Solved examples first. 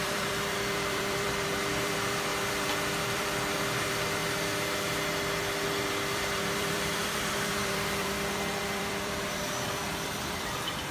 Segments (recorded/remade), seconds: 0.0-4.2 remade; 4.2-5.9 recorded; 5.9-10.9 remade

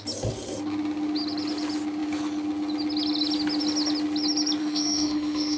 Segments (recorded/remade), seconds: 0.0-4.6 recorded; 4.6-5.6 remade

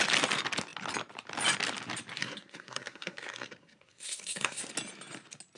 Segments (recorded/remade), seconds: 0.0-2.2 recorded; 2.2-4.7 remade; 4.7-5.6 recorded